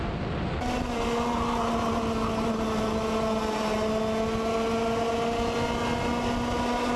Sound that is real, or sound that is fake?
real